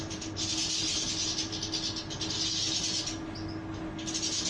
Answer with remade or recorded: recorded